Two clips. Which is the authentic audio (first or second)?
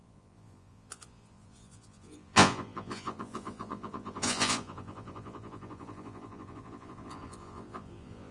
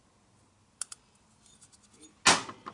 second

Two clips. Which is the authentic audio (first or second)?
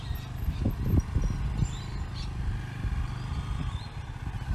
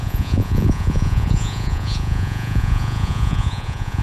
first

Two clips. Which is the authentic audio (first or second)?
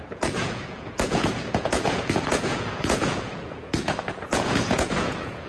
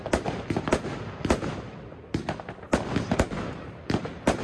second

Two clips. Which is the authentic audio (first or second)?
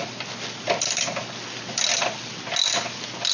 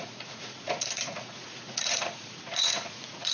first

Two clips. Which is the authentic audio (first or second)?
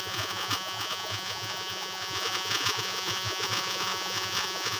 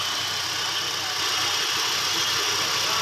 second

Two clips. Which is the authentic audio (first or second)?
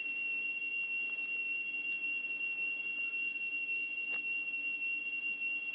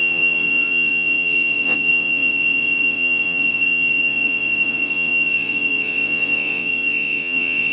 first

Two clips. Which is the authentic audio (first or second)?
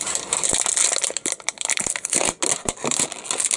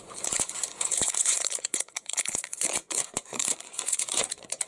first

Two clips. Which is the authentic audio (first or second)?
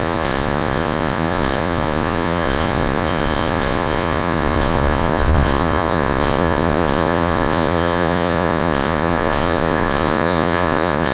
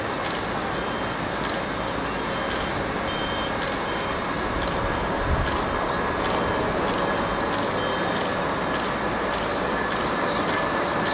second